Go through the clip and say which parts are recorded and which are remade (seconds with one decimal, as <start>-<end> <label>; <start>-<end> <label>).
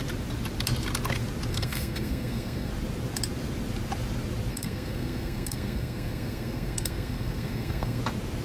0.0-1.5 recorded; 1.5-2.7 remade; 2.7-4.5 recorded; 4.5-8.0 remade; 8.0-8.4 recorded